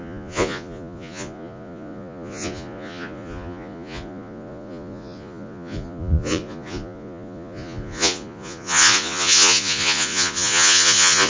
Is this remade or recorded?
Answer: remade